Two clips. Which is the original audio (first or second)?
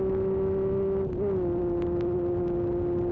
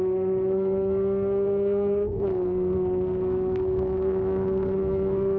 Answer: first